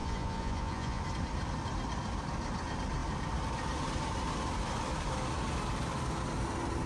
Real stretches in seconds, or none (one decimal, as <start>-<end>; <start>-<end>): 1.0-6.9